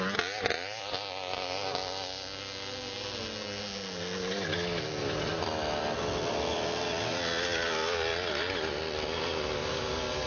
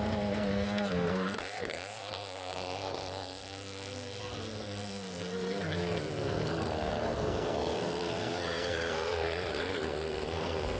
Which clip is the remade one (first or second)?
second